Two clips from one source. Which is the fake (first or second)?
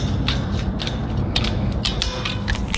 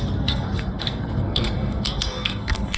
second